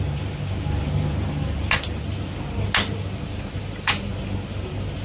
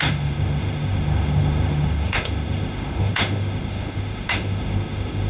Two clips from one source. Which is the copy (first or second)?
second